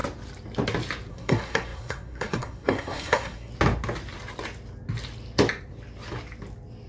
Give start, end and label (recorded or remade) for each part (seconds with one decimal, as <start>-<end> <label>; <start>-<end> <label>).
0.0-1.1 recorded; 1.1-3.5 remade; 3.5-6.9 recorded